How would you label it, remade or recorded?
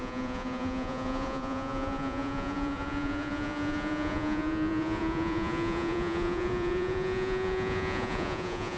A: remade